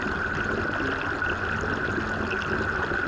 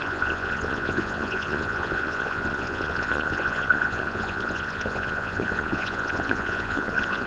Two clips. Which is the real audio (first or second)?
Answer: first